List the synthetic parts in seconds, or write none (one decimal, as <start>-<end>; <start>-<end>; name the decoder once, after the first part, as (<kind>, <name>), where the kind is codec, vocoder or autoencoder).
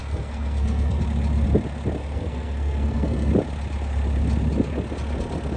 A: 0.0-1.0 (codec, SNAC); 2.0-3.3